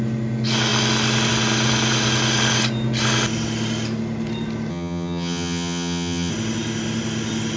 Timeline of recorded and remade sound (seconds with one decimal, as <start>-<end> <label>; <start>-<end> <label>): 0.0-4.7 recorded; 4.7-6.3 remade; 6.3-7.6 recorded